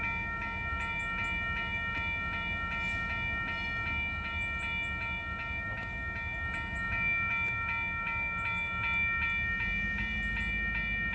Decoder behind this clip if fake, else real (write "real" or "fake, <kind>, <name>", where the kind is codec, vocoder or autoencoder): real